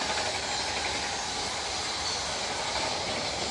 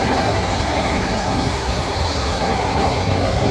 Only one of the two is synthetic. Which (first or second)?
second